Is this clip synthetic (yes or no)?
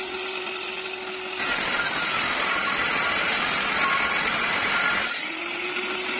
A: no